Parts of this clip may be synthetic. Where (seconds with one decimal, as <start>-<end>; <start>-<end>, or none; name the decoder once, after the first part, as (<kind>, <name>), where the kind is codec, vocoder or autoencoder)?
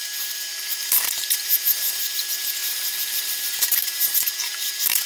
0.0-5.1 (vocoder, BigVGAN v2)